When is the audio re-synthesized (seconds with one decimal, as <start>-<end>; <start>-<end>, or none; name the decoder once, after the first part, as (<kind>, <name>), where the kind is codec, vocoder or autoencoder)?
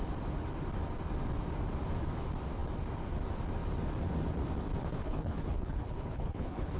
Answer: 5.0-6.8 (codec, HILCodec)